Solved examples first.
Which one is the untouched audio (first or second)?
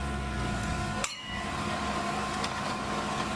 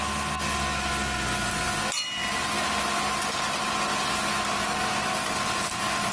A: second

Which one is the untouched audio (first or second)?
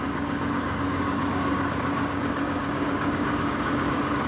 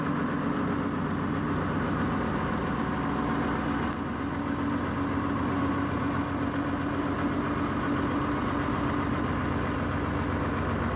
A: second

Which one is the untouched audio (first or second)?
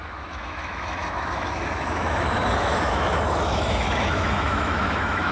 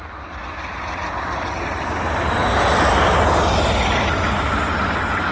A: second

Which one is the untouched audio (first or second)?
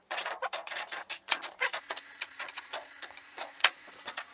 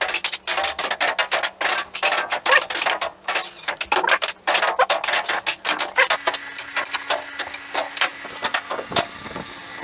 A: second